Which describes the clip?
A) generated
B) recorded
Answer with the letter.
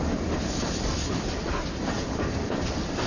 B